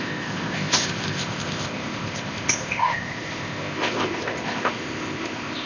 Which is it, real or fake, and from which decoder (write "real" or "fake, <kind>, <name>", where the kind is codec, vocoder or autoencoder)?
fake, codec, ZipCodec